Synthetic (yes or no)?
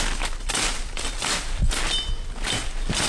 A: no